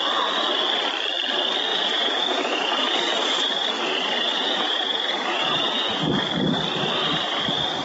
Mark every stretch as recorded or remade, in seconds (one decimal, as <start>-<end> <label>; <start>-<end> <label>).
0.0-1.7 recorded; 1.7-6.0 remade; 6.0-7.8 recorded